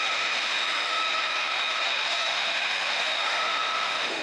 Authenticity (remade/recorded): remade